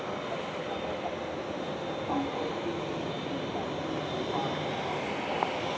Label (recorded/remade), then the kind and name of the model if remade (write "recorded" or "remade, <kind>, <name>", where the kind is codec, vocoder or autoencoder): recorded